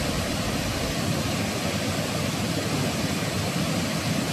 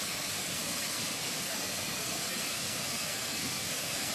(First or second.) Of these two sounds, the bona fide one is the first